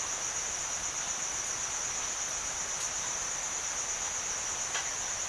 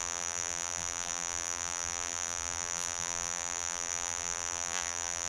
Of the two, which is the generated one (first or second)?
second